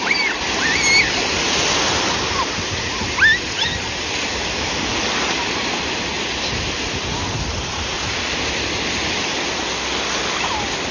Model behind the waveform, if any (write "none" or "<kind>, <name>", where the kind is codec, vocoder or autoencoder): none